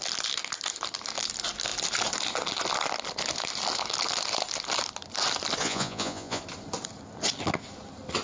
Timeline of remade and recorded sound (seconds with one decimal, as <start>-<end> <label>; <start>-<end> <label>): 0.0-5.6 recorded; 5.6-6.4 remade; 6.4-8.2 recorded